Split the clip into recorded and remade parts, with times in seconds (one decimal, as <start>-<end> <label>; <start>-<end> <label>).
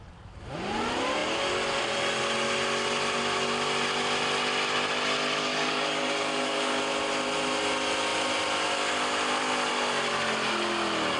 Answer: 0.0-5.4 recorded; 5.4-6.8 remade; 6.8-11.2 recorded